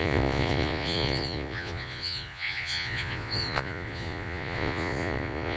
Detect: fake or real fake